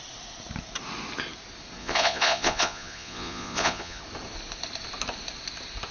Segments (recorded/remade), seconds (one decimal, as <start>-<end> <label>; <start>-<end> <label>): 0.0-1.8 recorded; 1.8-4.0 remade; 4.0-5.9 recorded